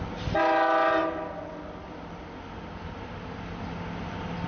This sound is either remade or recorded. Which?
recorded